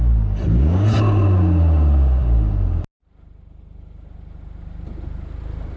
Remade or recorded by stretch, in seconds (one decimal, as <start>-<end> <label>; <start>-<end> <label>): 0.0-5.8 recorded